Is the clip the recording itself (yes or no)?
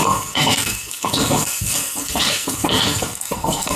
no